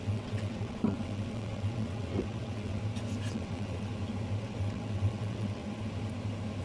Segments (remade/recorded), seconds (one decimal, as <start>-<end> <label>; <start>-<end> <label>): 0.0-2.8 remade; 2.8-3.3 recorded; 3.3-3.9 remade; 3.9-4.4 recorded; 4.4-5.6 remade; 5.6-6.6 recorded